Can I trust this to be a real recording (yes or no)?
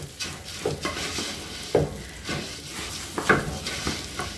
yes